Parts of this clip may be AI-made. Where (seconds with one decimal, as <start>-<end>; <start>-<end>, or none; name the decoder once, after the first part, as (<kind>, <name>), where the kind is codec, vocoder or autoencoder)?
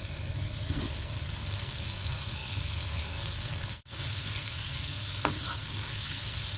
0.0-6.6 (codec, SNAC)